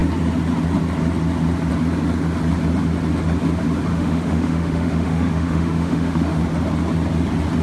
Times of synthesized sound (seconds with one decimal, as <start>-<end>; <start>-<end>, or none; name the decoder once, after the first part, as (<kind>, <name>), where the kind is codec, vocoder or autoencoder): 3.9-6.4 (autoencoder, DAC-VAE)